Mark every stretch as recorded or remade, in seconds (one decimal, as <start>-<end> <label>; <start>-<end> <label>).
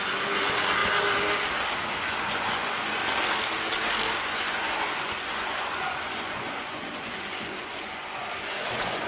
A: 0.0-0.8 remade; 0.8-1.9 recorded; 1.9-3.0 remade; 3.0-4.2 recorded; 4.2-9.1 remade